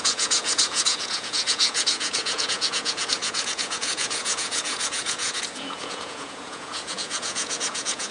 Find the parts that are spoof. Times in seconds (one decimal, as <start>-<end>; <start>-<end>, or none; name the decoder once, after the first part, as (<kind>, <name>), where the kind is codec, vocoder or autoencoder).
0.0-8.1 (vocoder, Vocos)